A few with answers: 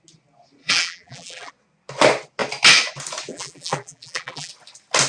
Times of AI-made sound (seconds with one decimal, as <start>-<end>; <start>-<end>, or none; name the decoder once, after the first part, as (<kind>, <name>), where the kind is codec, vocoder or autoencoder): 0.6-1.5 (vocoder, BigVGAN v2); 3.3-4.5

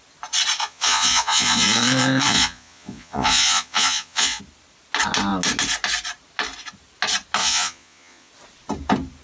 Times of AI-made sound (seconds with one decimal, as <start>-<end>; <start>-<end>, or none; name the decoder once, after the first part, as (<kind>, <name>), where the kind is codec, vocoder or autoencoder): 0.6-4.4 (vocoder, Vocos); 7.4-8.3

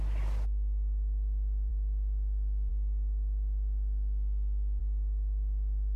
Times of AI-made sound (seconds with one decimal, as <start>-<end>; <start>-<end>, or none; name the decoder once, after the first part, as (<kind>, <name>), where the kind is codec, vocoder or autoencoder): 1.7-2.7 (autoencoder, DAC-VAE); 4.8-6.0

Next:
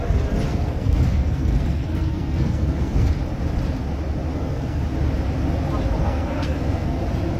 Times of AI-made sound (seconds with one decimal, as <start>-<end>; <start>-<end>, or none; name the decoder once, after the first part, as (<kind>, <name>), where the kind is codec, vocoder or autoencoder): 0.5-3.1 (codec, SNAC); 4.3-4.8; 6.0-7.0

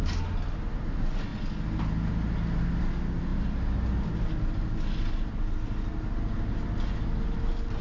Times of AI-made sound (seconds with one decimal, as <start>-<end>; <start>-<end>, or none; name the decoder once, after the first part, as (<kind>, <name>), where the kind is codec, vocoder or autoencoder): none